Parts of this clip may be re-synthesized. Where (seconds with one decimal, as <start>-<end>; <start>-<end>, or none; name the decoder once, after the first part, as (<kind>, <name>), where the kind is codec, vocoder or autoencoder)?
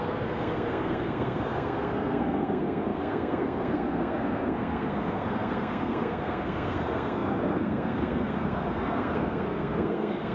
0.0-10.3 (codec, SNAC)